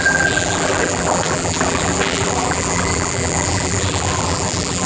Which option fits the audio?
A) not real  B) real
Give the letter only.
A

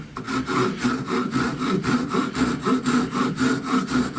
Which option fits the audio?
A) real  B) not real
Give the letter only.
A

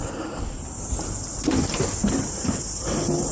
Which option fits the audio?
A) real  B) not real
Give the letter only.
A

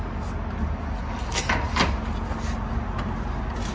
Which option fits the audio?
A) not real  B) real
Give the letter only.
B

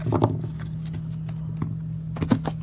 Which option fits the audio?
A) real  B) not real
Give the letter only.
A